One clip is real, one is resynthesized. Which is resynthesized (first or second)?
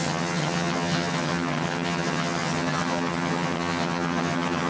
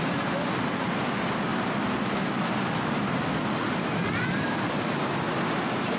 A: first